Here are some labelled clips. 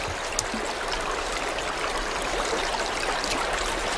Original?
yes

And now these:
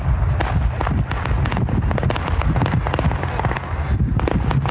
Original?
yes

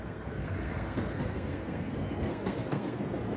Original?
no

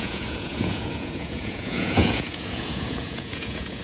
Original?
no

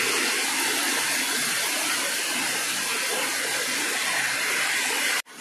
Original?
yes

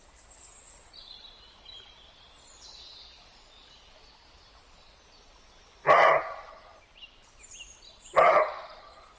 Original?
yes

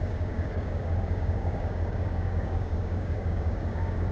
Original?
no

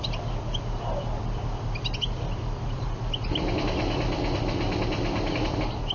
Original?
yes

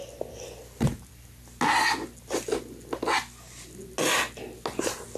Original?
yes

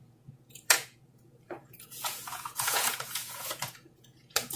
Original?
no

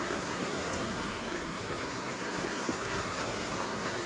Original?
no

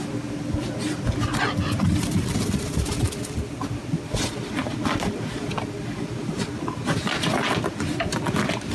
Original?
yes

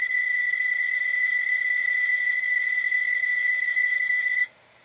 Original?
no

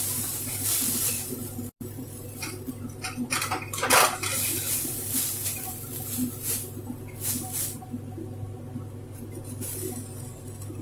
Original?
no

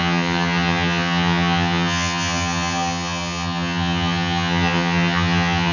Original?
no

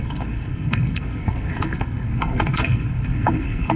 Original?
no